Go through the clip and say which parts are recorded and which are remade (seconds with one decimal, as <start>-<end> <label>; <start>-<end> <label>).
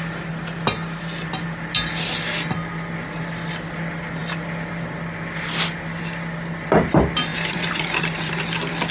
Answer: 0.0-7.3 recorded; 7.3-8.4 remade; 8.4-8.9 recorded